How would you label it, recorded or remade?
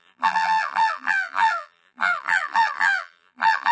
remade